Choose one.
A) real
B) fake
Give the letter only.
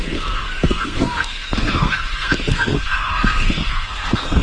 B